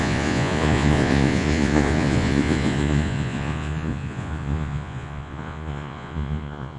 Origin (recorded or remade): remade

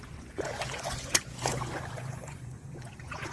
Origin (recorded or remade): remade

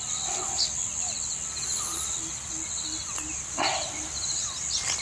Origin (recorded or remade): recorded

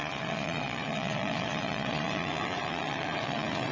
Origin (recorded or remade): remade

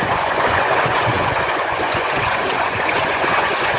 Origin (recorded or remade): remade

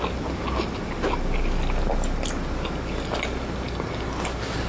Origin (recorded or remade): recorded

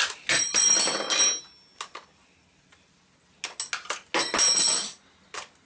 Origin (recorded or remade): recorded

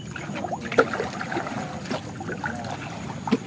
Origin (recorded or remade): recorded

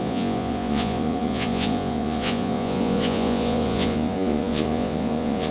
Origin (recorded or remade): remade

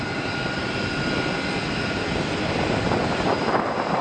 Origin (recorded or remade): recorded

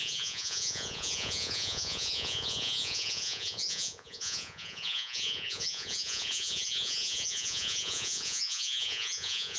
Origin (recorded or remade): remade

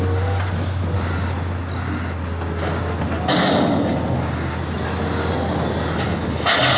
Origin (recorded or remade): recorded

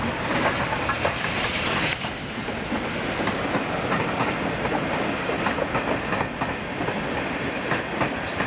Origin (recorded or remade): recorded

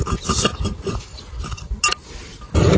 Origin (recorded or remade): recorded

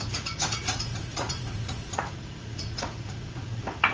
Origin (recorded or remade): remade